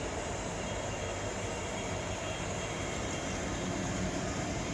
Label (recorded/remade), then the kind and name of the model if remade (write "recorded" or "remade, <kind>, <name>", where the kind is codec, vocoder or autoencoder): remade, vocoder, BigVGAN v2